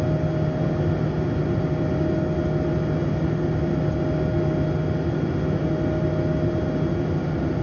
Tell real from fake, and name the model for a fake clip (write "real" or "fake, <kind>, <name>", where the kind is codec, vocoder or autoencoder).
real